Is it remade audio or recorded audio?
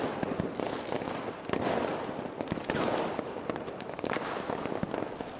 recorded